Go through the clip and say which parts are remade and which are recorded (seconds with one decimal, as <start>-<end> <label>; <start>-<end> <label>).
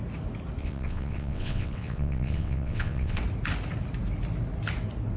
0.0-0.6 recorded; 0.6-3.2 remade; 3.2-5.2 recorded